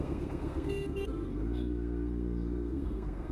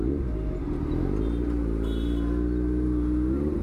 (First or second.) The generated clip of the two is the first